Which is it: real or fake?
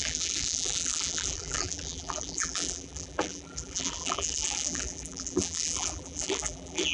fake